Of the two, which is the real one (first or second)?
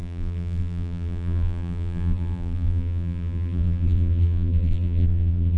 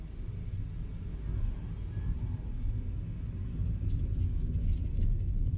second